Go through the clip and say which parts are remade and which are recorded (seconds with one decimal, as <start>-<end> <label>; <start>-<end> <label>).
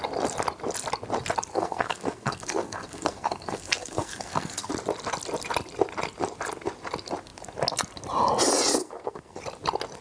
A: 0.0-1.5 recorded; 1.5-4.7 remade; 4.7-8.8 recorded; 8.8-9.4 remade; 9.4-10.0 recorded